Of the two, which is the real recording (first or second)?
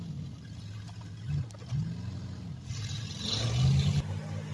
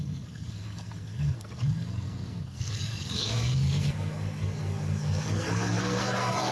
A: first